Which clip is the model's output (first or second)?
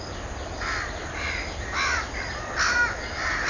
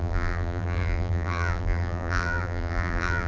second